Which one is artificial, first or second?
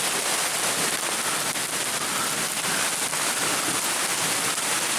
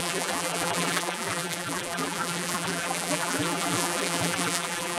second